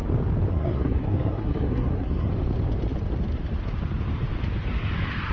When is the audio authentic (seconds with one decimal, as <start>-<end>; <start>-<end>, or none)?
0.0-0.5; 2.3-5.3